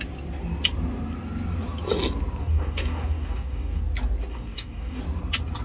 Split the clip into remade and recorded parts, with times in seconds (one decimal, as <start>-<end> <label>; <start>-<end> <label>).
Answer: 0.0-2.4 recorded; 2.4-3.8 remade; 3.8-4.3 recorded; 4.3-5.0 remade; 5.0-5.6 recorded